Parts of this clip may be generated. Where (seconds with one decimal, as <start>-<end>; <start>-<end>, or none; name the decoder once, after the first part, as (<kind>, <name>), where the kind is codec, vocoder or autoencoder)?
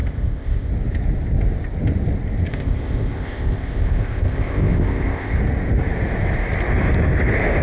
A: 0.0-0.7 (codec, ZipCodec); 2.5-5.4